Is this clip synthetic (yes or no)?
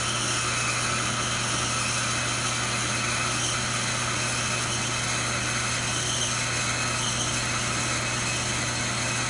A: no